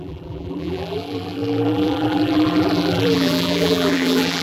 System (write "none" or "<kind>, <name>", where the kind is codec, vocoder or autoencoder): vocoder, BigVGAN v2